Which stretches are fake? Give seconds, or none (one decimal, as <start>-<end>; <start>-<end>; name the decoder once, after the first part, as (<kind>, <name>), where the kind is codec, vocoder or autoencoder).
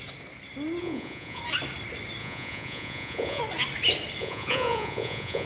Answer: 0.8-1.4 (vocoder, Vocos); 2.2-3.4; 4.2-5.5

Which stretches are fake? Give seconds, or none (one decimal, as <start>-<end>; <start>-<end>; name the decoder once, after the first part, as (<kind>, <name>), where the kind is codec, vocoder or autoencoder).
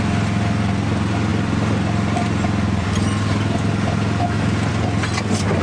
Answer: none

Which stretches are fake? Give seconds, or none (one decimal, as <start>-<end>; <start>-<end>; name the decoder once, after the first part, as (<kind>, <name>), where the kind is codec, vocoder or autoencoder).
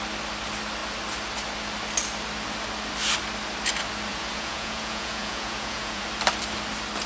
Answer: 4.1-6.0 (vocoder, Vocos)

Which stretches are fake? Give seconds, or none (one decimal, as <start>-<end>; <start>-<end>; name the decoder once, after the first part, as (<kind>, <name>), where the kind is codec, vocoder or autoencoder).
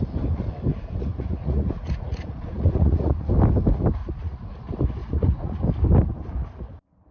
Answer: 0.7-3.3 (vocoder, Vocos); 4.0-4.5; 5.0-5.6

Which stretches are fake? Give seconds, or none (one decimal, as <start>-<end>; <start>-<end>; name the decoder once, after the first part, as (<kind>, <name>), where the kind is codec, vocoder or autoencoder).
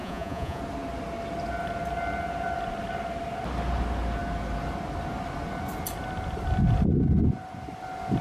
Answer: 0.0-0.6 (vocoder, Vocos)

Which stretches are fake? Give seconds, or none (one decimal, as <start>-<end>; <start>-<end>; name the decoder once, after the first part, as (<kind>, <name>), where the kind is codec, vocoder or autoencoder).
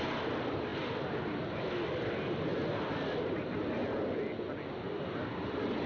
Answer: none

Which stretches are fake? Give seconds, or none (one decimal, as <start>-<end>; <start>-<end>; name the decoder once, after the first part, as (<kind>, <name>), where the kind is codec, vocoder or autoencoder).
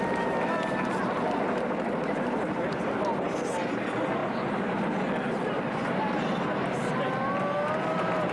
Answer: none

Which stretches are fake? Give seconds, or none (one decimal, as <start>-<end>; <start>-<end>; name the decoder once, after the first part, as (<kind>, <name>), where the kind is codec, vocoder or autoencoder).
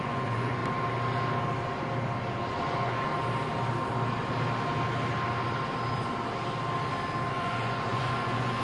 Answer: 0.0-0.6 (vocoder, Vocos); 2.5-3.1; 7.3-8.6